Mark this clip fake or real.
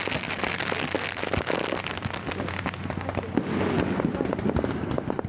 real